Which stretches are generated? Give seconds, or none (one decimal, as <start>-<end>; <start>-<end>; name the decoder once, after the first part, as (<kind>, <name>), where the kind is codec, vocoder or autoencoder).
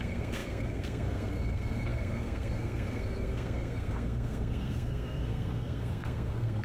0.0-6.6 (codec, SNAC)